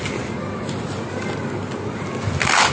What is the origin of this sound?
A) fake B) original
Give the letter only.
B